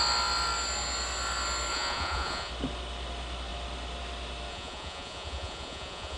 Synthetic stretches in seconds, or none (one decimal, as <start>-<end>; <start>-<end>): 1.7-2.5; 4.5-6.2